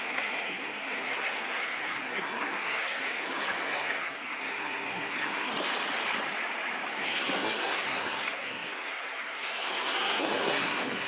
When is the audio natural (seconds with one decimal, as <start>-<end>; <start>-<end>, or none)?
5.5-6.9